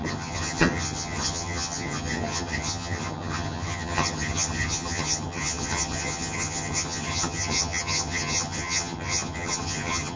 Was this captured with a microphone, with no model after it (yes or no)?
no